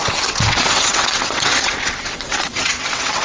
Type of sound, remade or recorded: remade